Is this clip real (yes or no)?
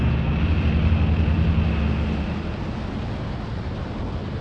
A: yes